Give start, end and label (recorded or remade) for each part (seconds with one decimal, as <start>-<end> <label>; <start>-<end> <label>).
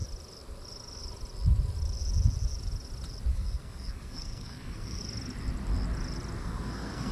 0.0-3.3 recorded; 3.3-5.0 remade; 5.0-6.4 recorded; 6.4-7.1 remade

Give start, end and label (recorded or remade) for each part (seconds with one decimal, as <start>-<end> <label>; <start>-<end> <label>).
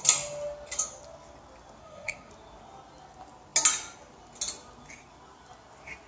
0.0-1.8 recorded; 1.8-2.3 remade; 2.3-6.1 recorded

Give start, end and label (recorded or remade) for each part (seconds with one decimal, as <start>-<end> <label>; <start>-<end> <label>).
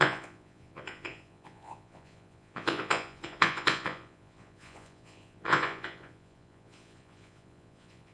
0.0-8.1 remade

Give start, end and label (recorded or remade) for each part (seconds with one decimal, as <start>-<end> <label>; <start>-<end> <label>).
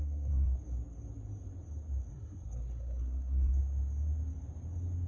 0.0-0.6 remade; 0.6-2.1 recorded; 2.1-3.6 remade; 3.6-5.1 recorded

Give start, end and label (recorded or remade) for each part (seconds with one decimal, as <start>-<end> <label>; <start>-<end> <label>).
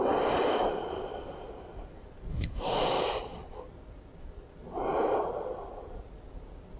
0.0-2.3 recorded; 2.3-2.9 remade; 2.9-6.8 recorded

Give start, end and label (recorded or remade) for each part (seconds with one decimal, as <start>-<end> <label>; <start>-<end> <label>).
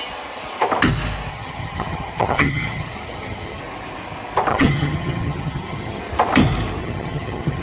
0.0-1.3 recorded; 1.3-3.6 remade; 3.6-4.5 recorded; 4.5-6.0 remade; 6.0-6.8 recorded; 6.8-7.6 remade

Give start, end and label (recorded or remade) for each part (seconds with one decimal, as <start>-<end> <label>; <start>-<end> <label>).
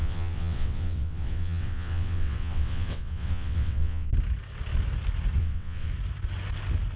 0.0-4.1 remade; 4.1-5.4 recorded; 5.4-5.9 remade; 5.9-7.0 recorded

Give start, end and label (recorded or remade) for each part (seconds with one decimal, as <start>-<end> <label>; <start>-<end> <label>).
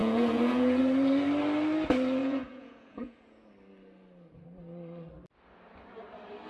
0.0-0.8 remade; 0.8-2.2 recorded; 2.2-3.5 remade; 3.5-6.5 recorded